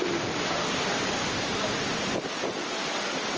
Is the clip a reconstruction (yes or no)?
no